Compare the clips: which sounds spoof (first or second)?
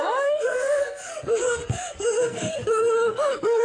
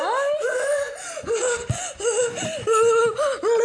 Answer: first